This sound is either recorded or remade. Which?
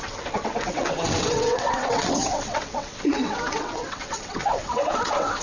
remade